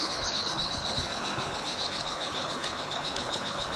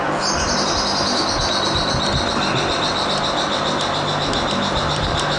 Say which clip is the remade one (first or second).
first